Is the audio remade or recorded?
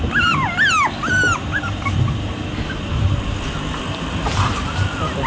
recorded